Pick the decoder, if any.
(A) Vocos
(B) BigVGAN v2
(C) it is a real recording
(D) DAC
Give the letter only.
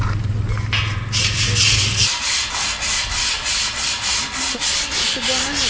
C